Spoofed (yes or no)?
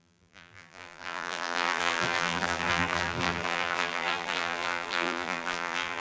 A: yes